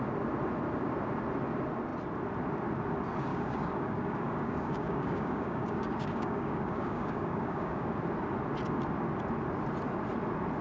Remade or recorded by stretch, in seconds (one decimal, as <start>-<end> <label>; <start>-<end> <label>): 0.0-3.3 recorded; 3.3-8.0 remade; 8.0-10.6 recorded